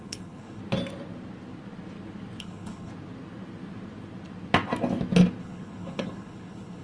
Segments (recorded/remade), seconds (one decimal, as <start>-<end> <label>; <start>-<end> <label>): 0.0-0.6 remade; 0.6-2.4 recorded; 2.4-2.9 remade; 2.9-5.4 recorded; 5.4-6.8 remade